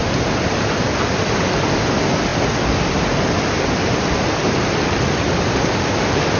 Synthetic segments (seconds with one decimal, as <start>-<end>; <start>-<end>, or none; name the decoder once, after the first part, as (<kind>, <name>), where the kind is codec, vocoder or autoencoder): none